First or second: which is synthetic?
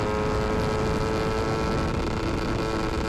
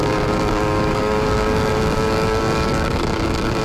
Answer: second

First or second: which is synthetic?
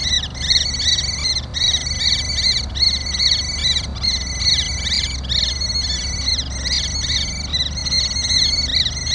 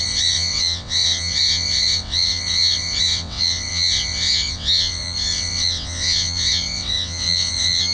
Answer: second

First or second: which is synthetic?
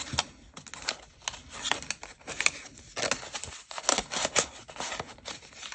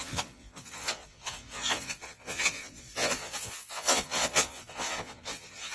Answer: second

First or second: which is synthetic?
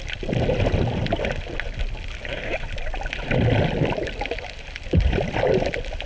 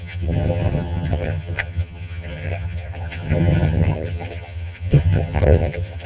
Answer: second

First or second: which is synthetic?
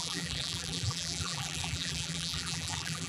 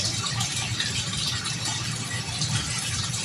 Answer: first